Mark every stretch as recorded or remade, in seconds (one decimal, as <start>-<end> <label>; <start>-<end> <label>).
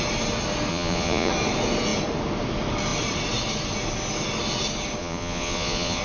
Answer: 0.0-0.7 recorded; 0.7-1.3 remade; 1.3-5.0 recorded; 5.0-6.0 remade